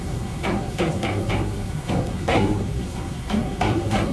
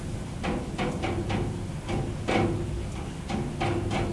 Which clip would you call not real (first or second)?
first